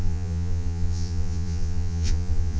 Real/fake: fake